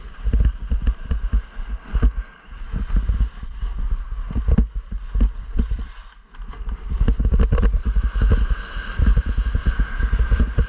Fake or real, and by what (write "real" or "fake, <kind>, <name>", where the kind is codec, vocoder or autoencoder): real